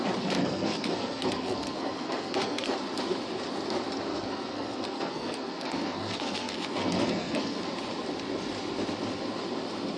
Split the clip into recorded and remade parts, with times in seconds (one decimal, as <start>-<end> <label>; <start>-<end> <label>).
0.0-0.4 recorded; 0.4-2.7 remade; 2.7-4.1 recorded; 4.1-7.6 remade; 7.6-10.0 recorded